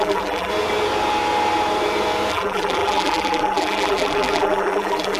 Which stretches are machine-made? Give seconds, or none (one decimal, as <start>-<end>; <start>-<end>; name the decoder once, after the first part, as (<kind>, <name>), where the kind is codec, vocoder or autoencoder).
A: 0.0-0.5 (vocoder, BigVGAN v2); 2.3-5.2